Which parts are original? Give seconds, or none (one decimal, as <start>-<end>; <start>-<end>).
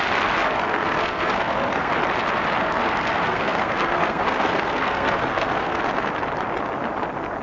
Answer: 0.0-0.4; 1.9-2.6; 5.8-7.4